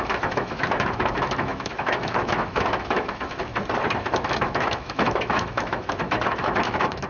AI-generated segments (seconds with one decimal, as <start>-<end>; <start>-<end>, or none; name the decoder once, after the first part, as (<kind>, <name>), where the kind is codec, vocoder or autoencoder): 0.0-3.5 (autoencoder, DAC-VAE); 4.0-7.1